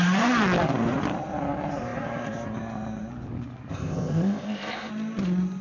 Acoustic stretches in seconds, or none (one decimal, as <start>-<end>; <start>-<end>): 0.0-3.7; 4.9-5.6